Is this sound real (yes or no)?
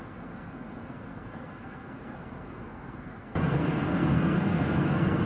no